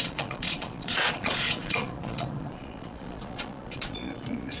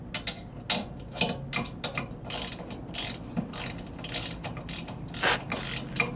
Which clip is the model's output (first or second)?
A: first